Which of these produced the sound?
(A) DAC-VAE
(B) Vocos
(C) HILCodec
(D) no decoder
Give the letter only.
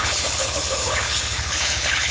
C